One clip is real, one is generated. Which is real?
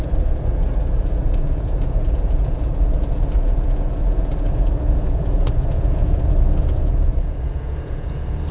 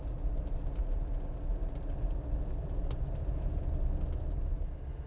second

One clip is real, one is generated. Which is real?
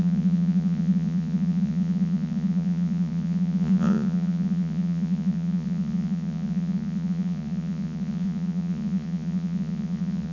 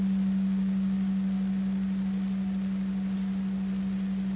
second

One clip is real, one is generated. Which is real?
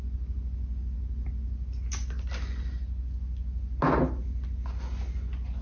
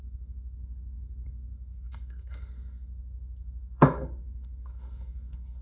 first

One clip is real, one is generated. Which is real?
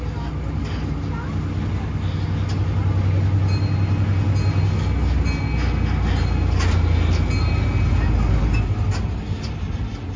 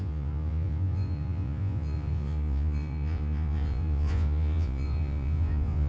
first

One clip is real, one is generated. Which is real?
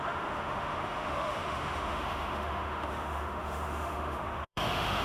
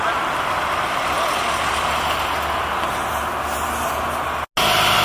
second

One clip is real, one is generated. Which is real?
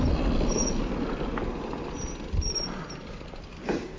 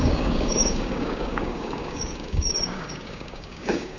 first